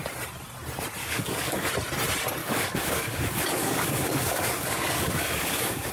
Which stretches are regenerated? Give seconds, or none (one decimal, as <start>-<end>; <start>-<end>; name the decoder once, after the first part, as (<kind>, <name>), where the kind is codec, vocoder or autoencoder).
1.0-1.7 (codec, DAC); 2.4-5.9